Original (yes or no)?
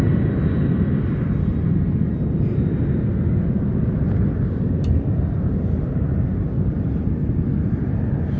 yes